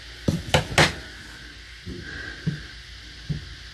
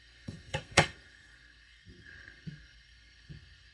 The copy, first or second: second